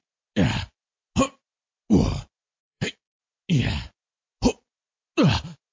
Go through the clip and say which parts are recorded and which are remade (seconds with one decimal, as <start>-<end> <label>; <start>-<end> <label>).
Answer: 0.0-2.6 recorded; 2.6-3.2 remade; 3.2-5.7 recorded